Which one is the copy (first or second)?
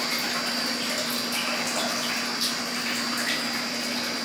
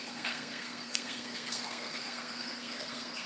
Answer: second